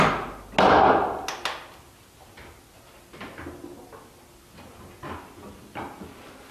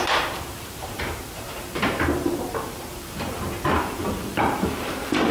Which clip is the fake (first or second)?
second